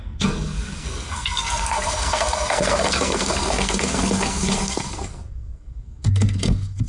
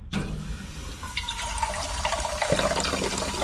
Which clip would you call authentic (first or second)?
second